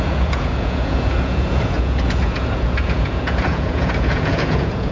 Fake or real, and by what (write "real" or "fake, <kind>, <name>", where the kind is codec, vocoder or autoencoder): fake, vocoder, Vocos